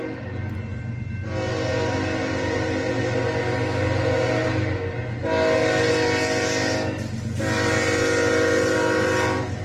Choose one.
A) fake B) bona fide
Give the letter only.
B